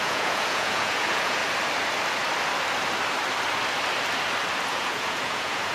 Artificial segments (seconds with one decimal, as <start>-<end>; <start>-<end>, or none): 0.0-1.4; 4.7-5.7